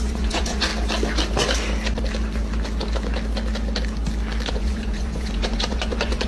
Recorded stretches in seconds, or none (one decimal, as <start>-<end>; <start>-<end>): 0.7-4.5